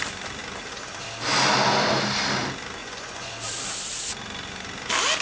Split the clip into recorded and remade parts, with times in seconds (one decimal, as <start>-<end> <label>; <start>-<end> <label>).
0.0-2.8 recorded; 2.8-3.3 remade; 3.3-5.2 recorded